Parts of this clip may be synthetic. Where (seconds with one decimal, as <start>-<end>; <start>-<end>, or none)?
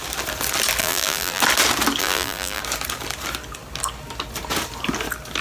0.8-1.4; 2.0-2.6